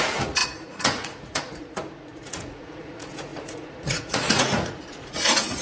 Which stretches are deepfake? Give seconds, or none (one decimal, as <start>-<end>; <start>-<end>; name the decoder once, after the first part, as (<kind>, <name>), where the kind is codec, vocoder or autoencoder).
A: 0.0-5.6 (vocoder, Vocos)

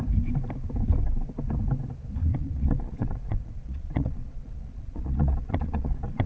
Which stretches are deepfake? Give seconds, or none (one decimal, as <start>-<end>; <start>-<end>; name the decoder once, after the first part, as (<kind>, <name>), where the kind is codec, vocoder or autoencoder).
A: 2.3-6.3 (vocoder, Vocos)

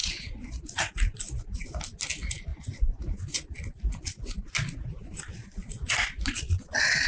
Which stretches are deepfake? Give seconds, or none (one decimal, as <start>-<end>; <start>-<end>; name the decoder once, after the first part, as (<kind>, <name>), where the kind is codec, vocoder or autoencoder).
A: 0.0-0.6 (vocoder, Vocos)

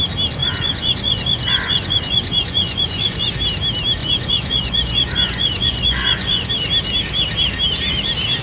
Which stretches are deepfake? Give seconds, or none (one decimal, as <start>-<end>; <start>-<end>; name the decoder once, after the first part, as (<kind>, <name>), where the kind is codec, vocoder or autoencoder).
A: 0.4-3.3 (vocoder, Vocos); 4.0-6.5

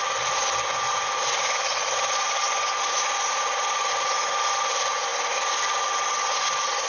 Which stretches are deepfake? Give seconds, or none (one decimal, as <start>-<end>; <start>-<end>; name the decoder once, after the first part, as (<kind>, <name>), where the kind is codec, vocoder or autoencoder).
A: none

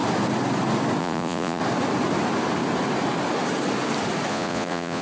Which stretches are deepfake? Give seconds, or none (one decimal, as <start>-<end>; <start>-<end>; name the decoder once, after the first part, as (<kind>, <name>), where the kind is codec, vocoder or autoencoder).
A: 1.0-1.6 (vocoder, Vocos); 4.3-5.0